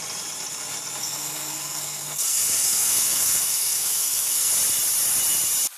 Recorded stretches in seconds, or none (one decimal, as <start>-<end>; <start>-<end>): 0.0-1.0; 4.5-5.8